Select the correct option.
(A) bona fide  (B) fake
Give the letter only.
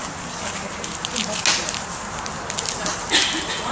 A